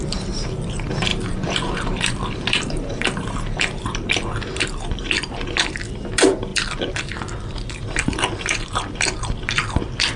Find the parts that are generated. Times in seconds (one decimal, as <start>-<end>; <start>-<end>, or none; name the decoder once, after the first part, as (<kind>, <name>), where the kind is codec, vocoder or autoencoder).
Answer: 0.0-10.2 (vocoder, BigVGAN v2)